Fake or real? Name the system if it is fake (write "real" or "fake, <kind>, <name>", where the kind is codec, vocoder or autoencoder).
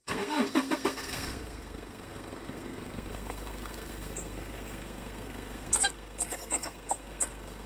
fake, codec, SNAC